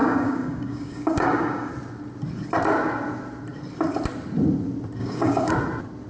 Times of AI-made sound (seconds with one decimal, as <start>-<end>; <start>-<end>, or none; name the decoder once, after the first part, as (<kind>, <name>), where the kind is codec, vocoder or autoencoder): 0.0-1.7 (codec, DAC); 5.0-5.5